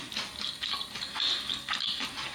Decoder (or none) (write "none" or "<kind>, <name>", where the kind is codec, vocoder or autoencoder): none